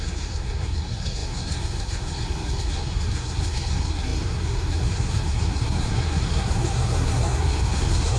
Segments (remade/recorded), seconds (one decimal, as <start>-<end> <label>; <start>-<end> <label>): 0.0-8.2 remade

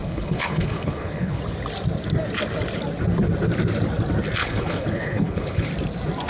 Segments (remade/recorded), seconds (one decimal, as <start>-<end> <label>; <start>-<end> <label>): 0.0-1.4 remade; 1.4-4.4 recorded; 4.4-5.7 remade; 5.7-6.3 recorded

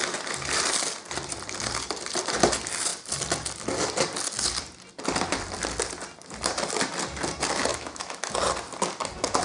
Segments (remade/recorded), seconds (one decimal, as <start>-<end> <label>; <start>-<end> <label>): 0.0-7.7 recorded; 7.7-8.3 remade; 8.3-9.4 recorded

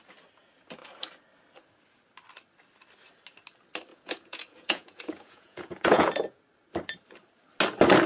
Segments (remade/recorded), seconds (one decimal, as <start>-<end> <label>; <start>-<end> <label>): 0.0-3.9 recorded; 3.9-6.4 remade; 6.4-8.1 recorded